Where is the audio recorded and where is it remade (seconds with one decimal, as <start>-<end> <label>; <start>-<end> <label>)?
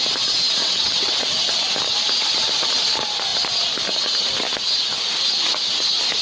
0.0-0.6 recorded; 0.6-1.3 remade; 1.3-6.2 recorded